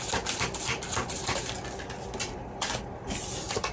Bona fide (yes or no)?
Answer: yes